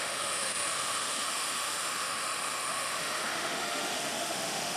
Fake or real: fake